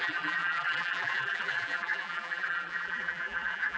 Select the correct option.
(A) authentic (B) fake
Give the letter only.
B